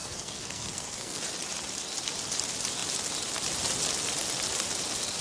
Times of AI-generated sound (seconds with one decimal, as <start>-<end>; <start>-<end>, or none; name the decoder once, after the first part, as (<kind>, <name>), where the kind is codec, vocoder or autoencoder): 0.0-1.2 (codec, SNAC)